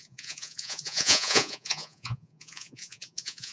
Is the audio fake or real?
fake